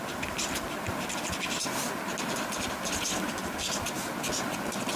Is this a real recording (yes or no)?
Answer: yes